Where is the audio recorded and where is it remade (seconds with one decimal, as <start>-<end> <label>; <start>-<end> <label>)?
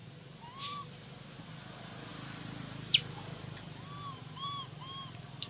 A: 0.0-5.5 recorded